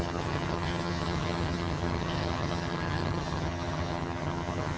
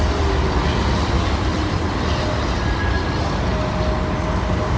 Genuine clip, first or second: second